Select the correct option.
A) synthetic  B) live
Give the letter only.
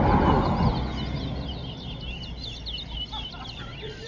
B